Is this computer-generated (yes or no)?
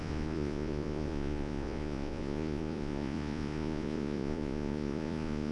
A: yes